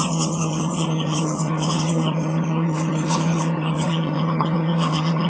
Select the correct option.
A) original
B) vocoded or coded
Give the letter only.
B